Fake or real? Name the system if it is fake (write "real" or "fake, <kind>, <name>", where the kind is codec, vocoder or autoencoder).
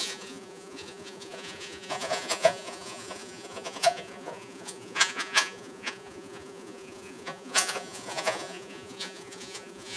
fake, vocoder, Vocos